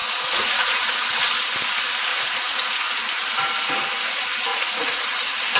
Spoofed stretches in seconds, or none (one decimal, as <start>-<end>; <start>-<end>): 0.0-1.1; 2.1-3.0; 4.5-5.0